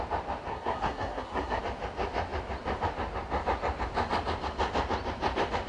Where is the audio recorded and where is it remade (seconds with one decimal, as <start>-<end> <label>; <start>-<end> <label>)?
0.0-0.5 recorded; 0.5-1.6 remade; 1.6-5.7 recorded